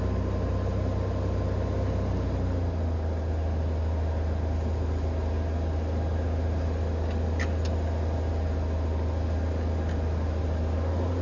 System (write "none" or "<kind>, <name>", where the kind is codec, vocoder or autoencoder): none